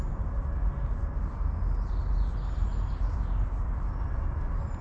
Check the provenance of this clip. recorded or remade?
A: recorded